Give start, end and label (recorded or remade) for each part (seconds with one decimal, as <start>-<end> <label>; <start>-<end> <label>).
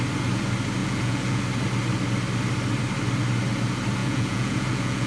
0.0-0.8 recorded; 0.8-1.4 remade; 1.4-4.0 recorded; 4.0-5.1 remade